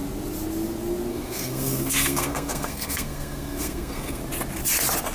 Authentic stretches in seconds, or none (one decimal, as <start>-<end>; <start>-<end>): 0.0-1.1; 4.2-5.1